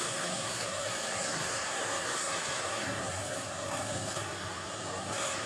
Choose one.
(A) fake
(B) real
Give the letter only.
A